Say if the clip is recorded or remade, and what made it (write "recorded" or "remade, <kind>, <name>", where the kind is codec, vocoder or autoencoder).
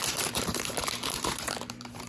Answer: remade, vocoder, BigVGAN v2